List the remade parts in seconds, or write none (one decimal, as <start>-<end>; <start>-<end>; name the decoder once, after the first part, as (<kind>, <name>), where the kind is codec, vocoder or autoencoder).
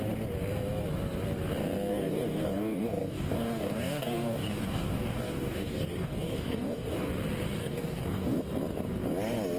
1.9-7.1 (codec, DAC); 7.6-8.4